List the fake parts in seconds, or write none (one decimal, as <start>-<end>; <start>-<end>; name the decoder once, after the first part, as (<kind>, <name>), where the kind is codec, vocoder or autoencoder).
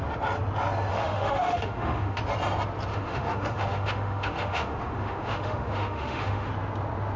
0.9-2.2 (autoencoder, DAC-VAE); 2.9-6.5